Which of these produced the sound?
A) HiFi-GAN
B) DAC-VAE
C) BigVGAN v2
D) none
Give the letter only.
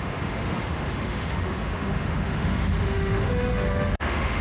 B